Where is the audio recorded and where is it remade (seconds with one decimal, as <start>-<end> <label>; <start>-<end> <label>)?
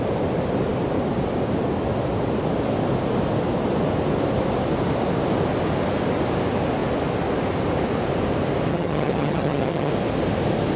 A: 0.0-8.7 recorded; 8.7-9.9 remade; 9.9-10.8 recorded